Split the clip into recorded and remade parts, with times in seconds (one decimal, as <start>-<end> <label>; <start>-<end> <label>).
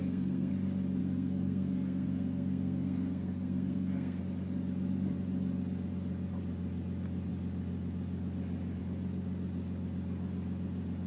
0.0-0.5 remade; 0.5-1.0 recorded; 1.0-4.2 remade; 4.2-11.1 recorded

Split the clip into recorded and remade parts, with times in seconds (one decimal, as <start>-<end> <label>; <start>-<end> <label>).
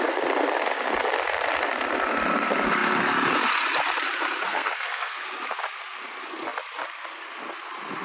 0.0-4.5 recorded; 4.5-5.2 remade; 5.2-8.0 recorded